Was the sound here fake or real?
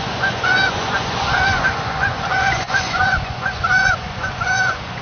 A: fake